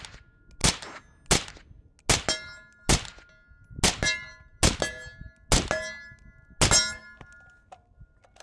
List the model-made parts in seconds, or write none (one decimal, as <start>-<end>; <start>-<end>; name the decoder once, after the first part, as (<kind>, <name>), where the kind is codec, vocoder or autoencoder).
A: none